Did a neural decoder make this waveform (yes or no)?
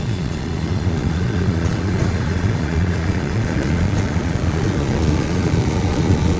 yes